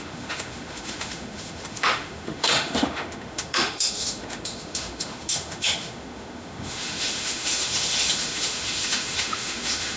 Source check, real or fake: fake